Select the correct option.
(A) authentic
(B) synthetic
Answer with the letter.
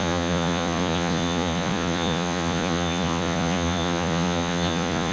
B